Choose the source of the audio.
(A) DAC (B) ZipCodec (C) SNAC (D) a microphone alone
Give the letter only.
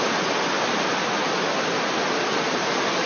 D